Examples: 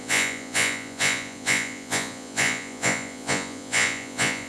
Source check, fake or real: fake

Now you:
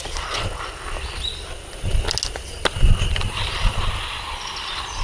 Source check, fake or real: real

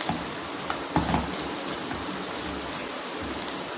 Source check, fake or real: real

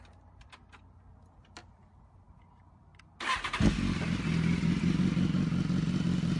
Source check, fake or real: real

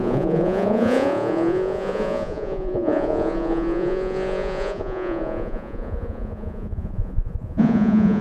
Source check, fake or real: fake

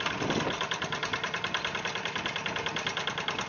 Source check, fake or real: real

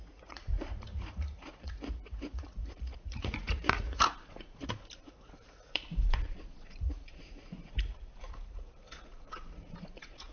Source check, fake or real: fake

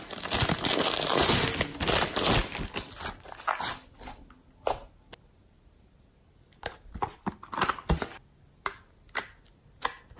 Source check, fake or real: real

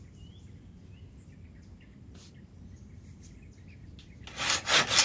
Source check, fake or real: real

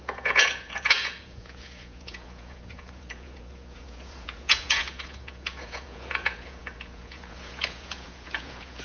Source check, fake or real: fake